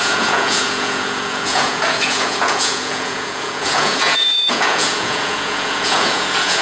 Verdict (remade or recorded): remade